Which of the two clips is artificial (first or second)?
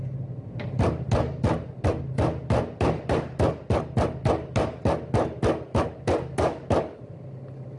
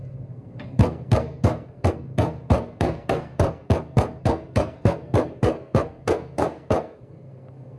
second